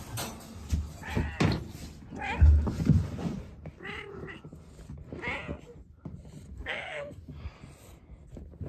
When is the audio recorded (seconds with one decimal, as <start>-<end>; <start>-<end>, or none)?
0.0-6.5; 7.2-8.7